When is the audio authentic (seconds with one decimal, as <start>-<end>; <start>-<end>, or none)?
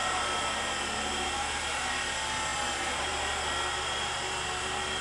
0.0-5.0